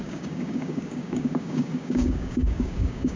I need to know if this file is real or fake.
fake